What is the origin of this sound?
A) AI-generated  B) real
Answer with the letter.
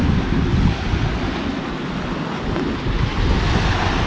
B